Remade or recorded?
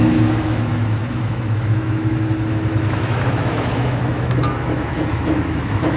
remade